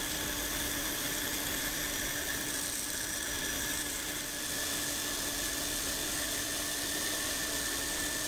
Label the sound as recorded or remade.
recorded